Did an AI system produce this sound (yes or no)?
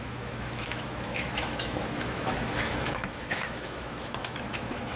yes